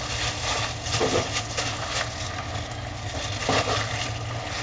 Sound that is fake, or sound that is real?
real